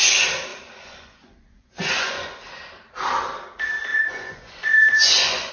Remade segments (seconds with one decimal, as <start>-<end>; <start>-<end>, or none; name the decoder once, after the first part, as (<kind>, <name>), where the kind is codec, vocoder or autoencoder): 0.5-2.4 (vocoder, Vocos); 3.9-5.5